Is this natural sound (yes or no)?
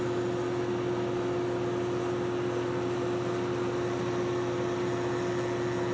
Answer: yes